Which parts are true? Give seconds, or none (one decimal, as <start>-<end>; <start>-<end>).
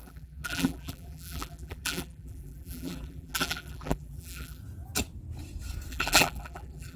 4.6-5.9